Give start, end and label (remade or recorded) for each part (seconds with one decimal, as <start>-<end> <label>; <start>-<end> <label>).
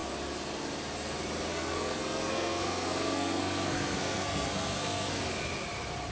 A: 0.0-1.5 recorded; 1.5-5.2 remade; 5.2-6.1 recorded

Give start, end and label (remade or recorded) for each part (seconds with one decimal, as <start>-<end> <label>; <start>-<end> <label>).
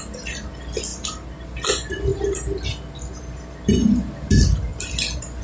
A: 0.0-3.8 recorded; 3.8-4.3 remade; 4.3-4.7 recorded; 4.7-5.4 remade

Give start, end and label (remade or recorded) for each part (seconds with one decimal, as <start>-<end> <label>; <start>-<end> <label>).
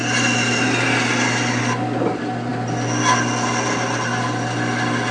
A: 0.0-1.6 recorded; 1.6-2.5 remade; 2.5-5.1 recorded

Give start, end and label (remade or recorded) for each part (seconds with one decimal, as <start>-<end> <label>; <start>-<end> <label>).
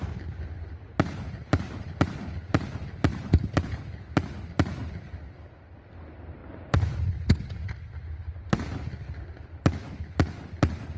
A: 0.0-11.0 recorded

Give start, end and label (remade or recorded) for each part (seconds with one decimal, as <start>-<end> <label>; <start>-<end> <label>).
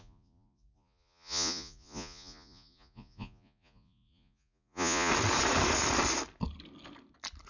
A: 0.0-5.1 remade; 5.1-7.5 recorded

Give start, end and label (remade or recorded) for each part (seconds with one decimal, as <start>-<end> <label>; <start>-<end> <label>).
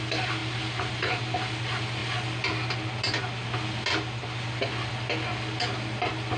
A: 0.0-6.4 recorded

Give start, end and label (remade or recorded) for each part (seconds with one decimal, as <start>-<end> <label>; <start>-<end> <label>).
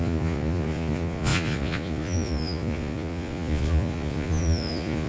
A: 0.0-5.1 remade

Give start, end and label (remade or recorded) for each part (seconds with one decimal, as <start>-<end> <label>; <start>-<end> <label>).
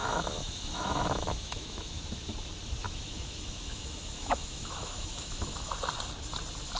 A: 0.0-2.0 remade; 2.0-2.8 recorded; 2.8-5.7 remade; 5.7-6.8 recorded